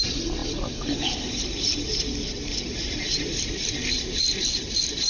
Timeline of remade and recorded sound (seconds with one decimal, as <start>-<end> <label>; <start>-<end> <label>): 0.0-5.1 recorded